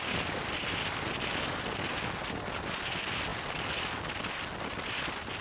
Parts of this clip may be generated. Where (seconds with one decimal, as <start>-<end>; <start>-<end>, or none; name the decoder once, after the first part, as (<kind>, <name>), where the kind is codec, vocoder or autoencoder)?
none

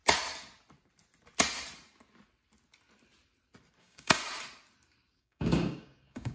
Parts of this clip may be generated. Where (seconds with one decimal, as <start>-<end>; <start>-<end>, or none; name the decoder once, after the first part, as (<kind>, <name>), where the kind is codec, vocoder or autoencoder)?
3.8-4.2 (codec, DAC); 5.2-6.3

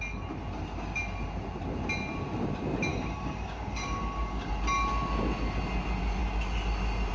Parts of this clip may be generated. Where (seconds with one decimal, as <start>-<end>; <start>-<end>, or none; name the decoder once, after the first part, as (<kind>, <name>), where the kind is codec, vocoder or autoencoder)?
2.9-4.5 (codec, DAC)

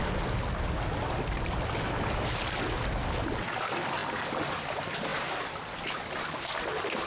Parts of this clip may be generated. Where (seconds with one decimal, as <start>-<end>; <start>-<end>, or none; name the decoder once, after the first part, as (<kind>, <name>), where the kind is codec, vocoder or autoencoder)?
none